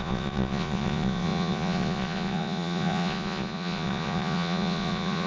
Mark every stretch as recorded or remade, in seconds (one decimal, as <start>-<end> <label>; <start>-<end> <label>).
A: 0.0-5.3 remade